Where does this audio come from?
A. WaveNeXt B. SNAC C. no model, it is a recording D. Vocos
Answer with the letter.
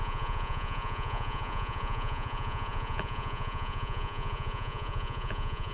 D